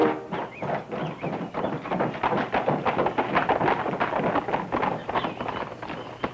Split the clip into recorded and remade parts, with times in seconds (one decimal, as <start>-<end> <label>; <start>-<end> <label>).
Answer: 0.0-6.3 recorded